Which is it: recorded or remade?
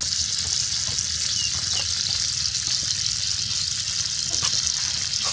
recorded